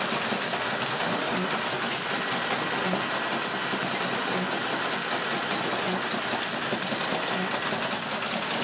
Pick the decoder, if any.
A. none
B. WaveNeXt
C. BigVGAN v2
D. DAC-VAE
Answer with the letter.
A